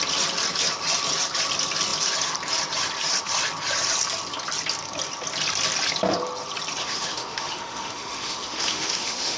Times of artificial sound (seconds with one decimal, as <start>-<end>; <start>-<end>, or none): 6.8-9.4